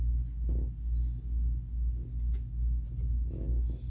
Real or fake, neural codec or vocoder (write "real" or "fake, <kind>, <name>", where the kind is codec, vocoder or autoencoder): real